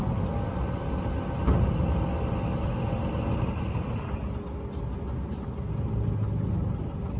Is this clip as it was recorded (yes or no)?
yes